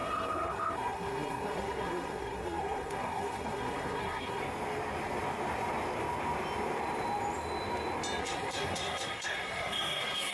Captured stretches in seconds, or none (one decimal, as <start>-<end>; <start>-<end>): 4.4-8.2